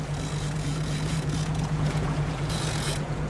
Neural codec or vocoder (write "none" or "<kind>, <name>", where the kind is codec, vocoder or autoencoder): vocoder, Vocos